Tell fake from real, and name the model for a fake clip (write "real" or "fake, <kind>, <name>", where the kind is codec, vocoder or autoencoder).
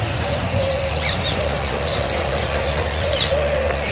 fake, vocoder, Vocos